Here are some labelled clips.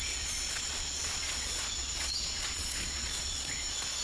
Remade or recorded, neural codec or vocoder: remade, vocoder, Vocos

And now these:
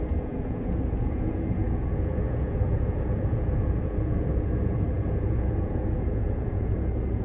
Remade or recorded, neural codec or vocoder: remade, vocoder, Vocos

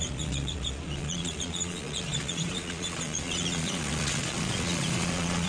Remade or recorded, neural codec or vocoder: remade, vocoder, Vocos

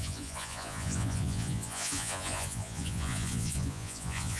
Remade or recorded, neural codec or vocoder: remade, vocoder, Vocos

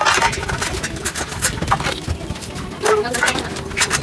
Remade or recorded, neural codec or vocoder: recorded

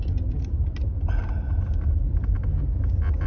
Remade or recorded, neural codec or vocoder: recorded